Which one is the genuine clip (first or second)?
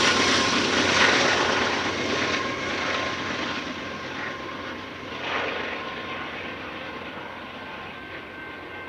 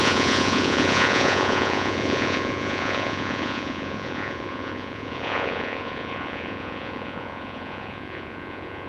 first